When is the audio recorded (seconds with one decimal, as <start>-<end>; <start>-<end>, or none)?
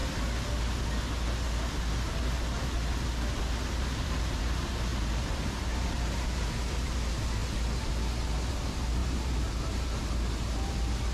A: 0.0-3.8; 7.4-8.5